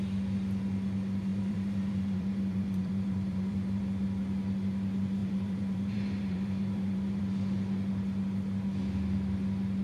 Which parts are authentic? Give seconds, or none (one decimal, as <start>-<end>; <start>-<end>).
0.0-1.3; 3.8-5.2; 7.2-9.8